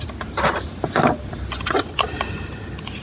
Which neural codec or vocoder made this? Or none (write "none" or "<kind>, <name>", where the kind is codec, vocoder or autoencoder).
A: none